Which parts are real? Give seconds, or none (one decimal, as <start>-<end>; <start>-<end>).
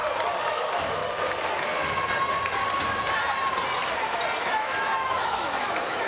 0.0-0.5; 1.0-4.4